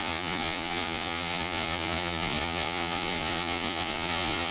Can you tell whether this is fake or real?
fake